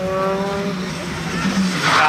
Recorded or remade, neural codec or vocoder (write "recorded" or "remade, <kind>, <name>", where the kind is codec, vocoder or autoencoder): recorded